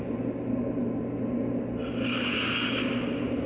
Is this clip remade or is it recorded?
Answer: recorded